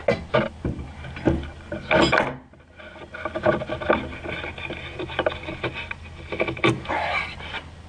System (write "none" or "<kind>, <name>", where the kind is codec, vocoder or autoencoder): none